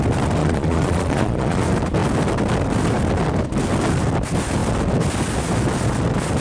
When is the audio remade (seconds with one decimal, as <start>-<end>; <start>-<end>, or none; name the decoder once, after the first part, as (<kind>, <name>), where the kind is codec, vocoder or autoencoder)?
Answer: 0.4-1.6 (vocoder, Vocos)